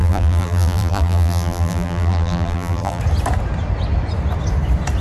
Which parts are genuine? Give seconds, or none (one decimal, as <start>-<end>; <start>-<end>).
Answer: 3.0-5.0